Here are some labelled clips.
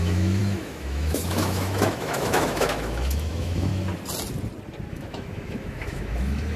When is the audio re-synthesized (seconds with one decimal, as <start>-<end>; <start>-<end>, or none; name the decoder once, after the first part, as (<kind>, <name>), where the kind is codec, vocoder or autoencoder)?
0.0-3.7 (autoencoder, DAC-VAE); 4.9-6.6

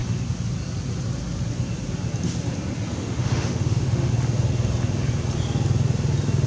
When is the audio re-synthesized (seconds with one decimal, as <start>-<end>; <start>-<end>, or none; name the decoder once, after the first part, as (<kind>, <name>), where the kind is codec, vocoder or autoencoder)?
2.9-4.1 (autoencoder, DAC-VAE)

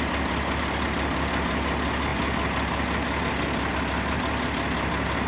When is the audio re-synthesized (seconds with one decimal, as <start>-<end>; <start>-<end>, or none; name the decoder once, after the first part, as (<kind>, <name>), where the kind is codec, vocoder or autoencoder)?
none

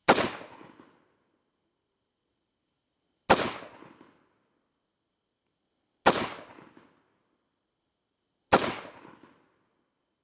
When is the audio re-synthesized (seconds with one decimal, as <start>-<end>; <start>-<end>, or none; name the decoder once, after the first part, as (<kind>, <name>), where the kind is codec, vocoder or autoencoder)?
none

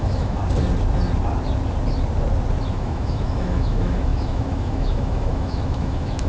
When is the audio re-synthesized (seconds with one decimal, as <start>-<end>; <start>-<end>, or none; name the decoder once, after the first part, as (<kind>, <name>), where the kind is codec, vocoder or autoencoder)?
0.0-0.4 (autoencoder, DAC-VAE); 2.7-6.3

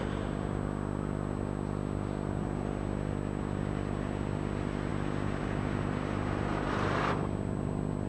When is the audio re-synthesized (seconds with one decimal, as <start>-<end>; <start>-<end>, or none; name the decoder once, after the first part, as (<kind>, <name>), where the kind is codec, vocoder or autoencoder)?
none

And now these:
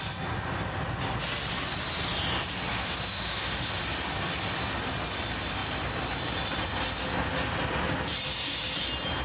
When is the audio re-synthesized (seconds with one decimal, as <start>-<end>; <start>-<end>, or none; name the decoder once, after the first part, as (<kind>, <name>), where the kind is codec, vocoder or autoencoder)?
2.7-3.8 (autoencoder, DAC-VAE)

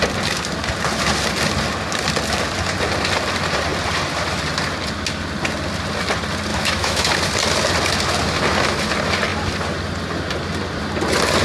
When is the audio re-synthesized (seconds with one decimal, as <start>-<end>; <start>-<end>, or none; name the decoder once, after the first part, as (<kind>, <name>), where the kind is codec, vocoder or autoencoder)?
6.5-7.1 (autoencoder, DAC-VAE)